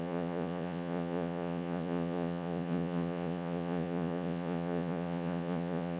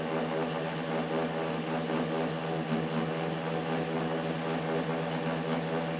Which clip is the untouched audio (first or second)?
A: second